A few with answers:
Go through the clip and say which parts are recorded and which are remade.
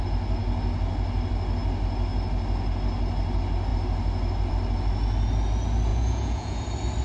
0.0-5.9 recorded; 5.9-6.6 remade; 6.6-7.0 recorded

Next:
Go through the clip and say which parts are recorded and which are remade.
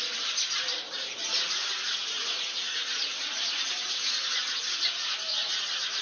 0.0-1.2 recorded; 1.2-4.8 remade; 4.8-5.3 recorded; 5.3-6.0 remade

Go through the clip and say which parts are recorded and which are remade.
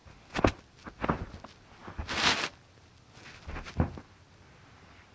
0.0-5.1 recorded